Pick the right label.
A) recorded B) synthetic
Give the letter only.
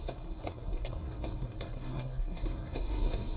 B